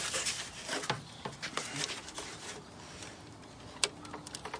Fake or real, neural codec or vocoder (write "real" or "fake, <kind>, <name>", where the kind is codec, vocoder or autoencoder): real